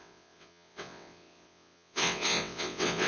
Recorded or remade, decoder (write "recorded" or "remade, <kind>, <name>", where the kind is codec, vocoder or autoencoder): remade, vocoder, WaveNeXt